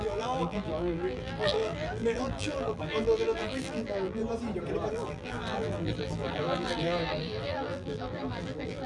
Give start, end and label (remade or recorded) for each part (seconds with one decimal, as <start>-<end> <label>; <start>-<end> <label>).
0.0-4.2 remade; 4.2-4.9 recorded; 4.9-8.9 remade